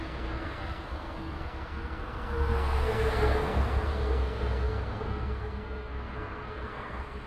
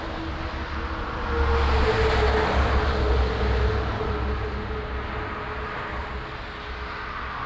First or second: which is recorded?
second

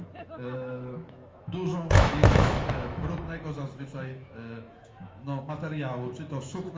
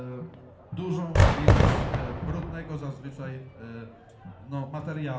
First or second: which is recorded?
second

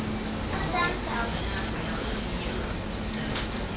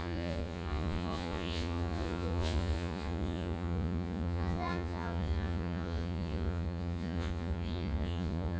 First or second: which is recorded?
first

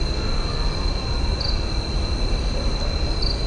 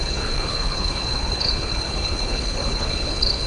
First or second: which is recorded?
first